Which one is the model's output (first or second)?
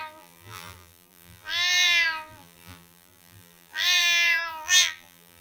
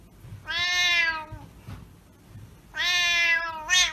first